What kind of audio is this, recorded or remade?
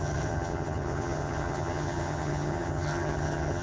remade